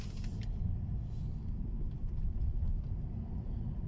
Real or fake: real